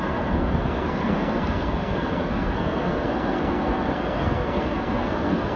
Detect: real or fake fake